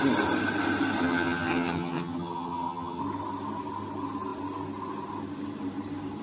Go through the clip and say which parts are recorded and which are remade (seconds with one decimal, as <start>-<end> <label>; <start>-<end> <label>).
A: 0.0-1.0 recorded; 1.0-3.0 remade; 3.0-6.2 recorded